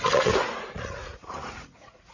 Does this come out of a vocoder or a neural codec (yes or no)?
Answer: yes